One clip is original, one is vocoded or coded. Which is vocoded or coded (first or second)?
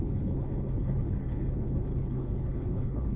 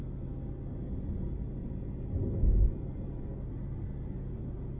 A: first